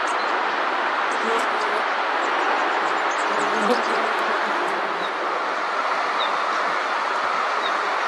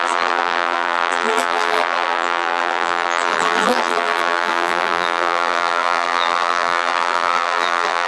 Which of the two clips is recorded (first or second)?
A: first